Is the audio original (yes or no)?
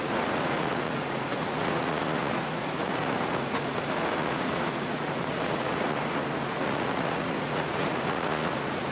no